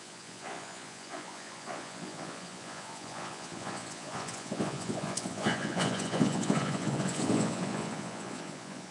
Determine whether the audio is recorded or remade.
remade